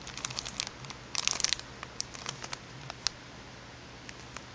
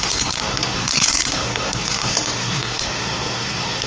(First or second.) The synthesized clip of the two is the second